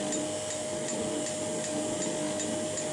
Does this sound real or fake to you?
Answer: real